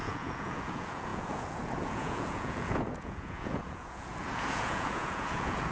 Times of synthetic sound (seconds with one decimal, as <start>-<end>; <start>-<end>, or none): 0.0-5.7